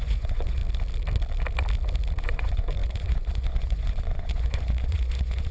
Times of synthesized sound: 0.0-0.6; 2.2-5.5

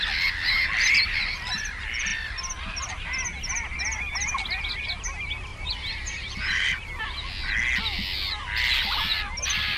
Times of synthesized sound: 5.5-7.0

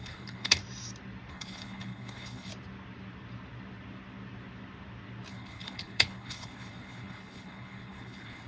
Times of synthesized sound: 0.0-0.6; 1.3-2.5; 5.3-8.5

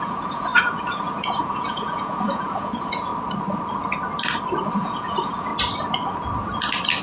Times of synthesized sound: 0.0-3.1; 4.7-5.5

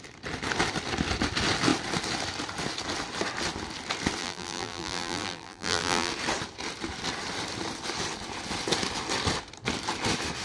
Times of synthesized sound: 4.2-6.1

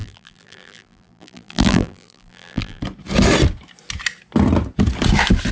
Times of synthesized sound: 0.0-2.8

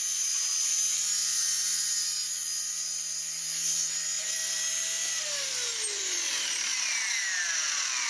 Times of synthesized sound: 0.0-6.7

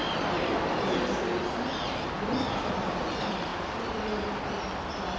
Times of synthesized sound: none